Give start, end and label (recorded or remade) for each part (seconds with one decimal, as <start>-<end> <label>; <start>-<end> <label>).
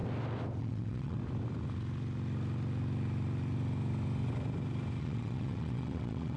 0.0-0.6 recorded; 0.6-1.2 remade; 1.2-5.0 recorded; 5.0-6.4 remade